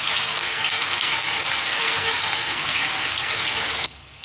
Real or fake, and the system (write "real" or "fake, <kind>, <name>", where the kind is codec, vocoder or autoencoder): fake, codec, SNAC